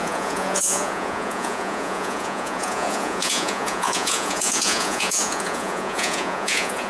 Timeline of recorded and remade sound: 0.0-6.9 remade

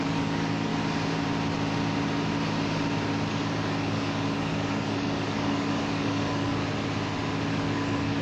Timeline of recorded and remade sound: 0.0-0.7 remade; 0.7-3.3 recorded; 3.3-6.6 remade; 6.6-7.5 recorded; 7.5-8.2 remade